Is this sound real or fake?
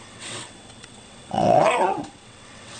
fake